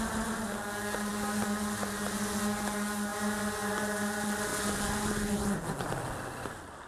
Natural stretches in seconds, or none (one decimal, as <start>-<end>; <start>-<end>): 0.0-6.9